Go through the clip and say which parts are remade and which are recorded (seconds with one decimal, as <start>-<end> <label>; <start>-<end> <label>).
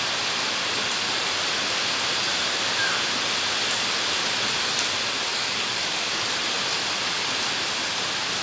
0.0-5.3 recorded; 5.3-6.2 remade; 6.2-8.4 recorded